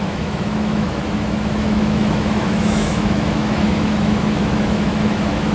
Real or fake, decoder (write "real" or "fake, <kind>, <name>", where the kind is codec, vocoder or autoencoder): fake, autoencoder, DAC-VAE